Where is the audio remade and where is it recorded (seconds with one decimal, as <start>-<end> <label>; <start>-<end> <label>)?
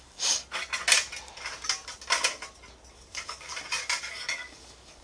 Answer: 0.0-0.4 remade; 0.4-2.9 recorded; 2.9-3.5 remade; 3.5-4.1 recorded; 4.1-5.0 remade